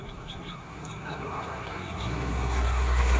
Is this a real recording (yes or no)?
no